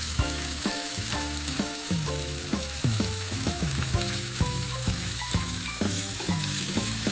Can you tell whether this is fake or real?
fake